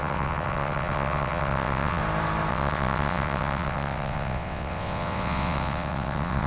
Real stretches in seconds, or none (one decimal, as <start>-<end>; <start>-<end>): 2.0-2.5